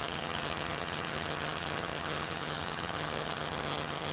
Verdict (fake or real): fake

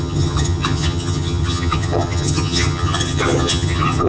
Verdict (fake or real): fake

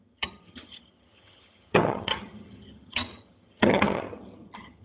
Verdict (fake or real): fake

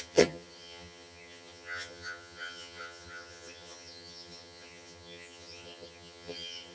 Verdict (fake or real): fake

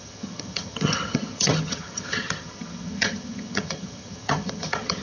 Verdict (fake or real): fake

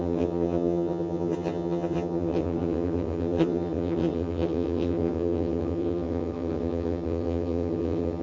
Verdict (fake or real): fake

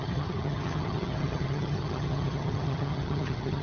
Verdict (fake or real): fake